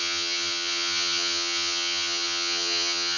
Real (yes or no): no